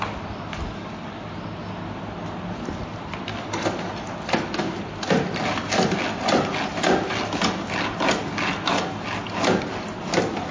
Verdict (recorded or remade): recorded